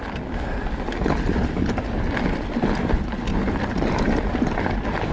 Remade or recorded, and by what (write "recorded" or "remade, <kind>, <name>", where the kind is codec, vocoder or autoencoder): recorded